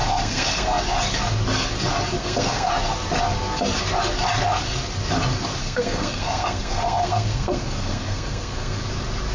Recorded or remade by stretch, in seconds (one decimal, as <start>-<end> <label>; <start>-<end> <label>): 0.0-0.8 remade; 0.8-2.2 recorded; 2.2-2.7 remade; 2.7-5.6 recorded; 5.6-8.8 remade; 8.8-9.3 recorded